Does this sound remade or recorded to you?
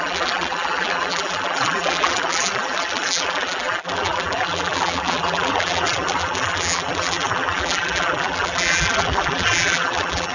remade